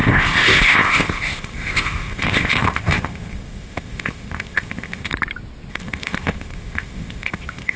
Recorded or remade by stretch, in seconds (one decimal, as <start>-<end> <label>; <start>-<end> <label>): 0.0-5.1 remade; 5.1-5.7 recorded; 5.7-7.8 remade